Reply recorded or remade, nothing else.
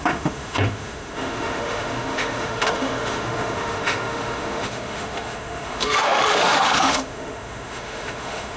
remade